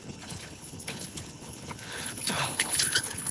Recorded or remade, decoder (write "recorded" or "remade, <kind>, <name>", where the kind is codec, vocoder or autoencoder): remade, codec, HILCodec